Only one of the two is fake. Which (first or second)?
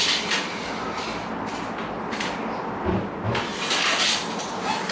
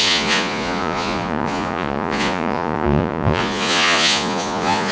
second